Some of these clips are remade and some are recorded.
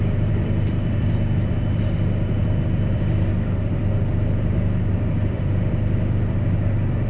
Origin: remade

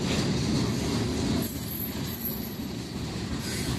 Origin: recorded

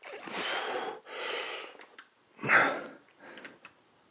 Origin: recorded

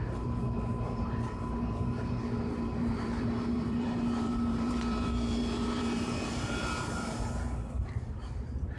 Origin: remade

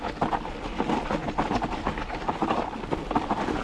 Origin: recorded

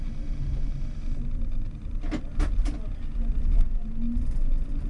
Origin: recorded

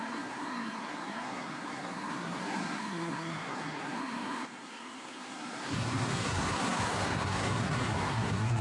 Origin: remade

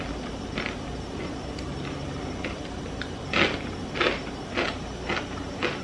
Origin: recorded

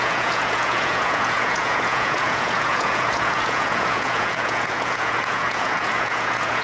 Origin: remade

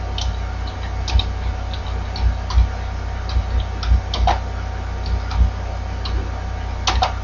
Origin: recorded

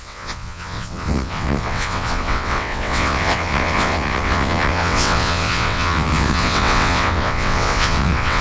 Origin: remade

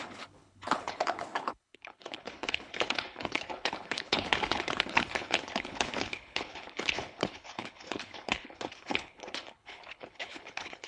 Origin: remade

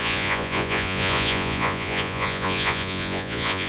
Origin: remade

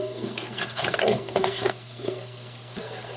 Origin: remade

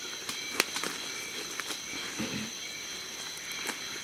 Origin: recorded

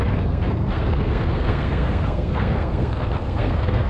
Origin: remade